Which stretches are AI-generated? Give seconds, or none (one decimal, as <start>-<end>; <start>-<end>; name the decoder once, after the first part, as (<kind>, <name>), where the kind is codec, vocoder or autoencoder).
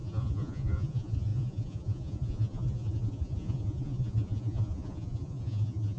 0.0-6.0 (vocoder, Vocos)